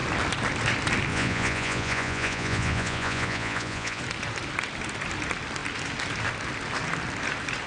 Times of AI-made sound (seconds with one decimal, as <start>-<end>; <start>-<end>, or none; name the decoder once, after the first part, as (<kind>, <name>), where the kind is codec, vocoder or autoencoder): 1.1-4.0 (vocoder, Vocos)